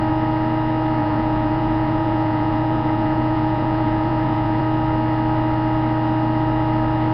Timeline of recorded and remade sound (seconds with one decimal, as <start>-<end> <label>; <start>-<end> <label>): 0.0-1.0 recorded; 1.0-4.6 remade; 4.6-7.1 recorded